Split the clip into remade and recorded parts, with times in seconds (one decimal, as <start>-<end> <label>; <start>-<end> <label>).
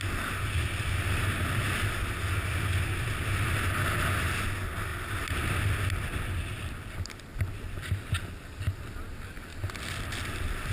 0.0-10.7 recorded